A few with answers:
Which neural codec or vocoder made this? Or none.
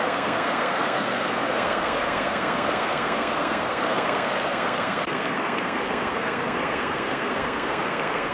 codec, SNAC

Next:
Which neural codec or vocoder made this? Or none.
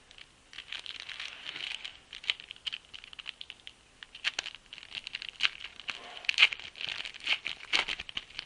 none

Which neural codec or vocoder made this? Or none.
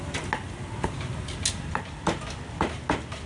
none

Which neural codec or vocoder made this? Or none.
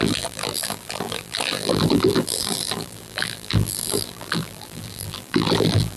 vocoder, BigVGAN v2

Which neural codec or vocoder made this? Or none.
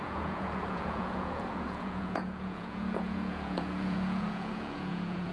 vocoder, Vocos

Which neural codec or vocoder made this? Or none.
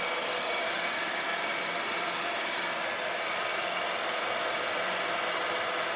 vocoder, BigVGAN v2